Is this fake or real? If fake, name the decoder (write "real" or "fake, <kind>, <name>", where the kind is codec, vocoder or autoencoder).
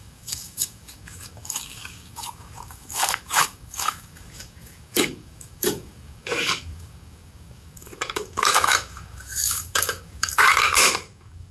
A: fake, codec, DAC